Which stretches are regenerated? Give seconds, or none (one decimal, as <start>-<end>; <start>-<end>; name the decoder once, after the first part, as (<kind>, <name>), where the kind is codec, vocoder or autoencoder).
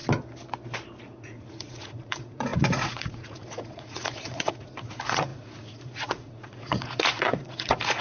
1.0-8.0 (vocoder, Vocos)